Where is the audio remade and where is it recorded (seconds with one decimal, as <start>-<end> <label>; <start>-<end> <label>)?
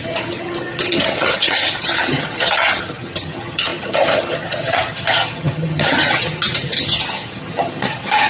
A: 0.0-8.3 remade